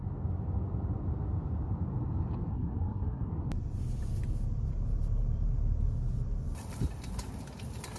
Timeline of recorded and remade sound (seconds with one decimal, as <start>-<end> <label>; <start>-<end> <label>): 0.0-2.5 recorded; 2.5-3.3 remade; 3.3-8.0 recorded